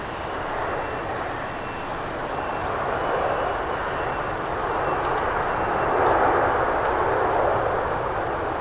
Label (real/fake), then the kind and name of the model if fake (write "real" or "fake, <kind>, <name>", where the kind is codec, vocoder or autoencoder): real